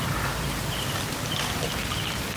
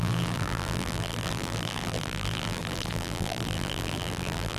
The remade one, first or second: second